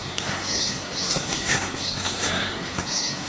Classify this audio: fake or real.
fake